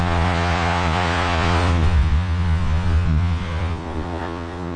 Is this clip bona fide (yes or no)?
no